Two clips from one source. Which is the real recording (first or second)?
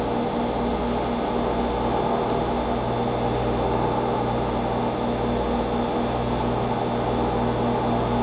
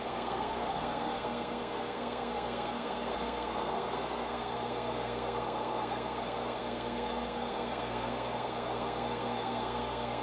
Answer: first